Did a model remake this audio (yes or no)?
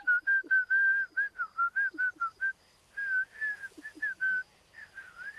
no